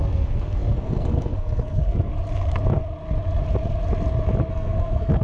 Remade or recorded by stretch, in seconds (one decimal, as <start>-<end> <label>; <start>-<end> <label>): 0.0-2.1 remade; 2.1-4.5 recorded; 4.5-5.2 remade